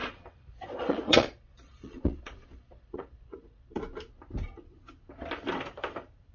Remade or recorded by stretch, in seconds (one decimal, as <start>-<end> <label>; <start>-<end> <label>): 0.0-3.8 remade; 3.8-6.3 recorded